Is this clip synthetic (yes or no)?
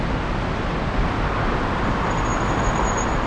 no